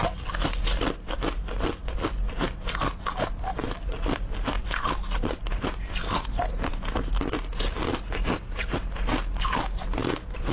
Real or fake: real